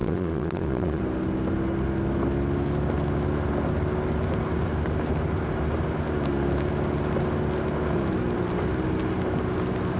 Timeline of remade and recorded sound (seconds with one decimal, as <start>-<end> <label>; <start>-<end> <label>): 0.0-1.0 remade; 1.0-10.0 recorded